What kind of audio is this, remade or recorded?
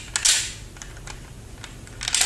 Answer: recorded